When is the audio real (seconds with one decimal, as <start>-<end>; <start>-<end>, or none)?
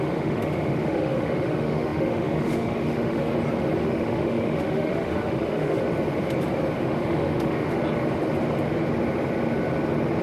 3.3-3.8; 5.8-6.8; 7.8-10.2